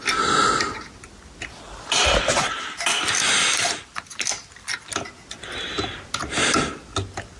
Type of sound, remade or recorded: recorded